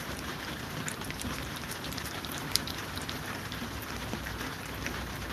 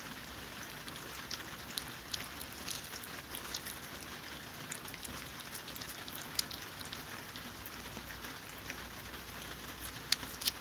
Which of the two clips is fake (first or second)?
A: first